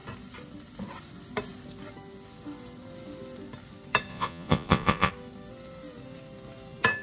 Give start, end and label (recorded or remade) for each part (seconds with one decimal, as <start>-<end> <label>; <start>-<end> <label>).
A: 0.0-4.1 recorded; 4.1-5.1 remade; 5.1-7.0 recorded